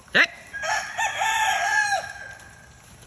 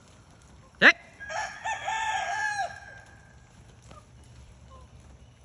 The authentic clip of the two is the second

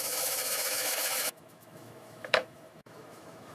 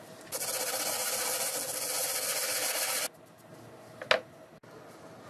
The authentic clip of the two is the second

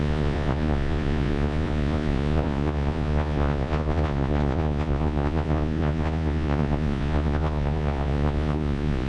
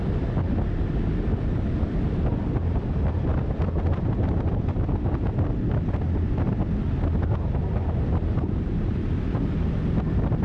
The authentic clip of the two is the second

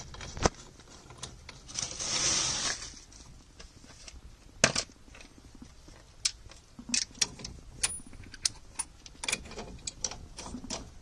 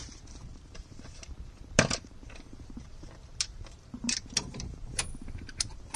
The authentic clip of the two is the first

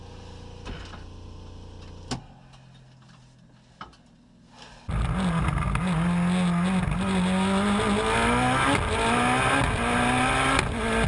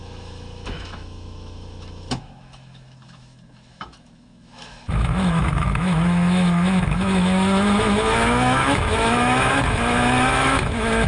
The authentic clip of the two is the first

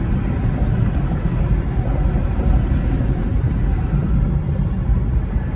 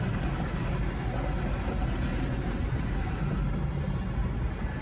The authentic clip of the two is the second